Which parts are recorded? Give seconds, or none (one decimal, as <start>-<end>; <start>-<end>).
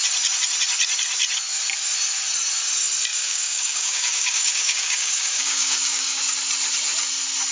0.0-3.1; 6.2-7.5